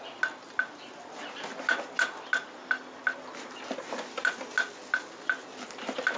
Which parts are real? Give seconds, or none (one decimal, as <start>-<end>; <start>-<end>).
0.0-6.2